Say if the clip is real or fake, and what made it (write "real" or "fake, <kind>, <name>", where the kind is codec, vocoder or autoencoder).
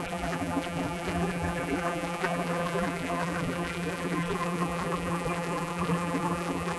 fake, vocoder, BigVGAN v2